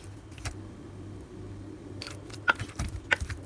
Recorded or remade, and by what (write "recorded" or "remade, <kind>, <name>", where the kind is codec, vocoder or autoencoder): remade, vocoder, BigVGAN v2